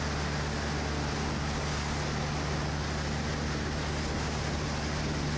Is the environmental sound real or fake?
real